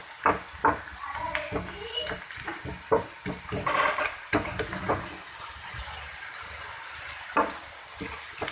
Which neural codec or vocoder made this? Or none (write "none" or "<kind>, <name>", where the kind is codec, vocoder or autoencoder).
none